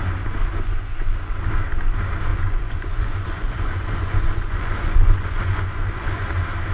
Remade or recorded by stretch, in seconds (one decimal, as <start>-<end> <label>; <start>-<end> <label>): 0.0-0.4 recorded; 0.4-1.3 remade; 1.3-2.3 recorded; 2.3-6.3 remade; 6.3-6.7 recorded